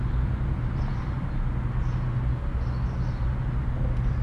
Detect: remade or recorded recorded